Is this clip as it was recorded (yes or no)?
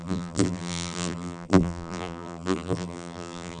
no